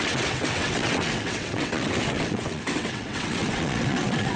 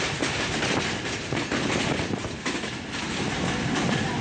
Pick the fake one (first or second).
first